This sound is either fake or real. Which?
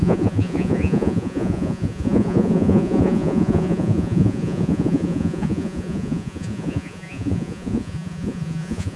fake